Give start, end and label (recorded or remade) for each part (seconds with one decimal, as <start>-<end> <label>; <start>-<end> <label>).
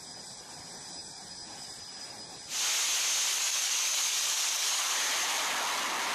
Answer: 0.0-3.3 recorded; 3.3-5.0 remade; 5.0-6.1 recorded